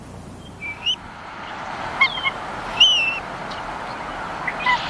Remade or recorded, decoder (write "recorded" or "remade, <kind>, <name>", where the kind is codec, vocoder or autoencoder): recorded